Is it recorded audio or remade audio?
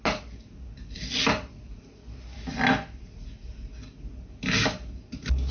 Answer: recorded